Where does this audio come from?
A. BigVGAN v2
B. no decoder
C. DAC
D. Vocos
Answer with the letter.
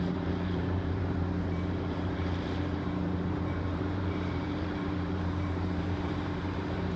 A